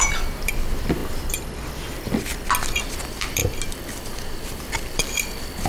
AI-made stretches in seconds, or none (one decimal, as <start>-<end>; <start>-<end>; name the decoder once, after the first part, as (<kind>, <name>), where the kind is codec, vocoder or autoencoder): 0.0-2.3 (vocoder, BigVGAN v2); 2.9-3.4; 4.5-5.7